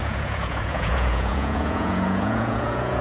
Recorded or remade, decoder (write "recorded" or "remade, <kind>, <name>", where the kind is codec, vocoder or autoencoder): remade, vocoder, Vocos